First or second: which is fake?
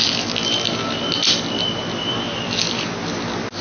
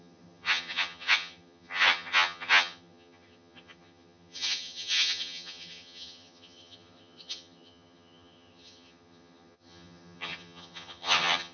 second